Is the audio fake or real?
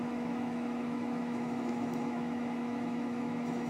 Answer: fake